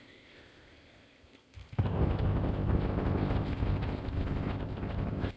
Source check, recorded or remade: remade